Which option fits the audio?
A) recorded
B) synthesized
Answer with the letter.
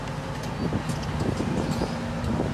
A